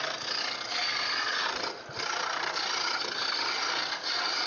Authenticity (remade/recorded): recorded